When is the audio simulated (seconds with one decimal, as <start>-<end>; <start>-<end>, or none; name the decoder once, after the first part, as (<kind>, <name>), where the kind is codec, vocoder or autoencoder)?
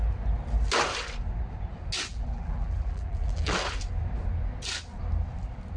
2.1-3.5 (vocoder, BigVGAN v2)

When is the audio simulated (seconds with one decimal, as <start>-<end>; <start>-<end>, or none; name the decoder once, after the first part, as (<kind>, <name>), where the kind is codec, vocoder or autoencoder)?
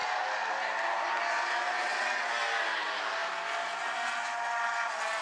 1.7-2.3 (vocoder, WaveNeXt)